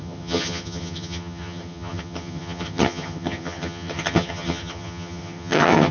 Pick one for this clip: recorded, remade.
remade